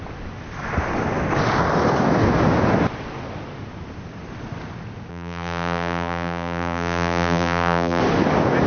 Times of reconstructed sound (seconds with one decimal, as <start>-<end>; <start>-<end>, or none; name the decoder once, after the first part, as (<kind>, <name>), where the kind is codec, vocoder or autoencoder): 5.1-8.0 (vocoder, BigVGAN v2)